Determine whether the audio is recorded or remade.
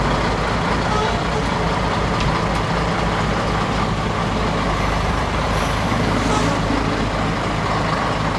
recorded